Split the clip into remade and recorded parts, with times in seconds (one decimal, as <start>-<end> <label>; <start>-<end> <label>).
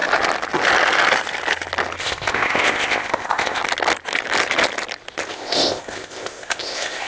0.0-2.0 recorded; 2.0-3.6 remade; 3.6-5.3 recorded; 5.3-7.1 remade